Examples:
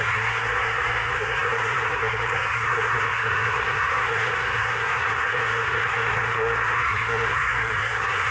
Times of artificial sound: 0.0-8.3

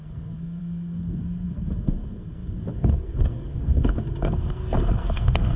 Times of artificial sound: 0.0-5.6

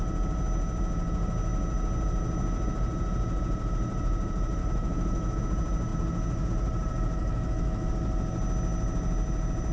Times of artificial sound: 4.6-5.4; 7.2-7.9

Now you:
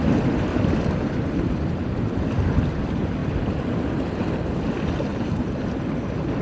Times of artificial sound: 0.5-2.6; 3.2-4.6